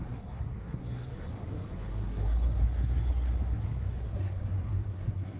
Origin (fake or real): fake